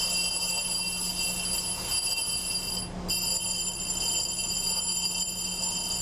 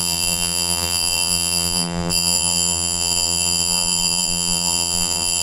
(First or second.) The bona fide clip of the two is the first